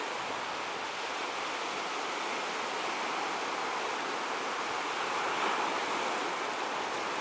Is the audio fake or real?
real